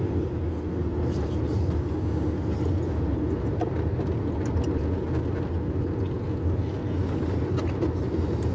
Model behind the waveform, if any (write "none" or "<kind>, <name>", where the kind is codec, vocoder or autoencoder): none